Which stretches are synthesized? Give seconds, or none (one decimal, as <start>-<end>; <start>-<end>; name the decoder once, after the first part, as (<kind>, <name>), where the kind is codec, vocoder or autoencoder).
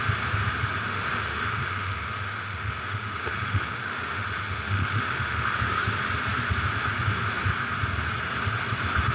0.9-5.5 (autoencoder, DAC-VAE)